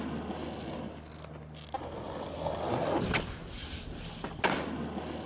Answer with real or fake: real